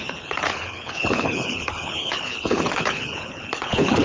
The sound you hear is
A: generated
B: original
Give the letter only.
A